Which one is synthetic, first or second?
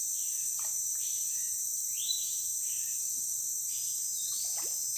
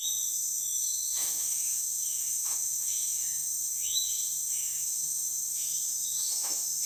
second